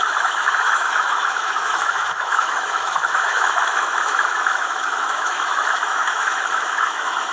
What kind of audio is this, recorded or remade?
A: remade